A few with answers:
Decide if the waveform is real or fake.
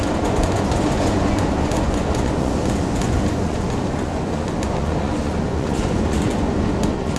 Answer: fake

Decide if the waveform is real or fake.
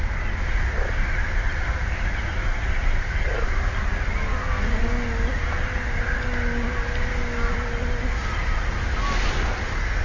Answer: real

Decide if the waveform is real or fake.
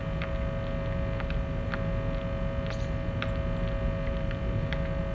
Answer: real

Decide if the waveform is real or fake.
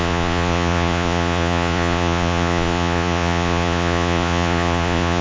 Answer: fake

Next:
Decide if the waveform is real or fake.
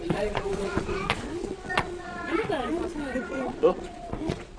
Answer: fake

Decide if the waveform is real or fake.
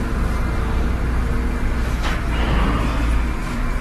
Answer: real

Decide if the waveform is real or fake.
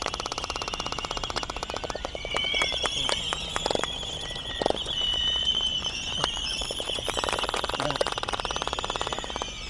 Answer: fake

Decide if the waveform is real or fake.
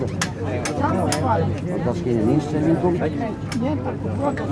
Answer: real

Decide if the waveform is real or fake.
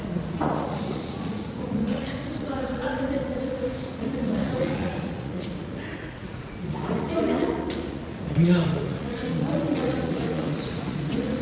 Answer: fake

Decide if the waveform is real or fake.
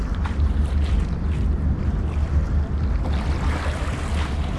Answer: real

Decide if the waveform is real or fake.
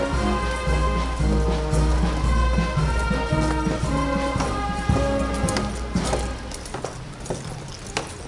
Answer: real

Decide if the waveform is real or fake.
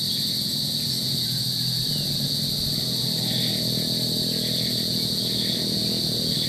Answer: real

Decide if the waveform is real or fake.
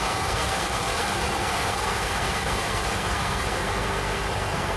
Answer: fake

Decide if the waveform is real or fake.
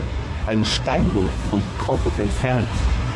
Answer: fake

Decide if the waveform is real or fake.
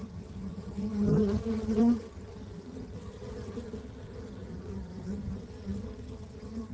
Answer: fake